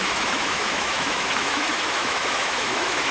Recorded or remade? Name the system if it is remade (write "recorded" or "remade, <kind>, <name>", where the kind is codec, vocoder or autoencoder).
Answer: remade, autoencoder, DAC-VAE